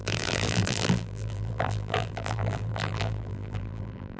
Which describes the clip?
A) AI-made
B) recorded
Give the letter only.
A